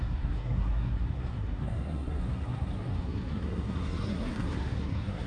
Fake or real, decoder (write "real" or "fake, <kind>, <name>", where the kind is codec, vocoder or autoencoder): fake, codec, SNAC